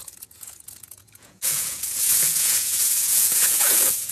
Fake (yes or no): yes